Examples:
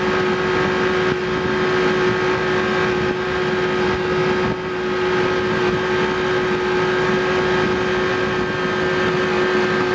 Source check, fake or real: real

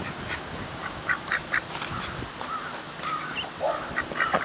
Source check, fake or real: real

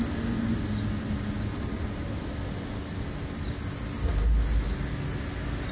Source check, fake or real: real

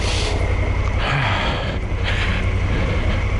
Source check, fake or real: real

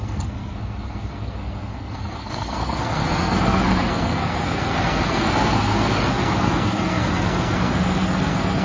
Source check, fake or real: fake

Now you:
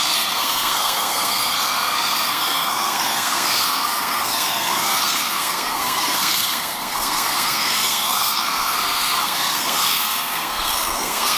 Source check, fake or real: fake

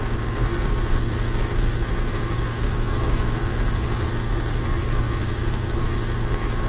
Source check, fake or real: fake